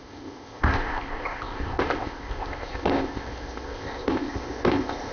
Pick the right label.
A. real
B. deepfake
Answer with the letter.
B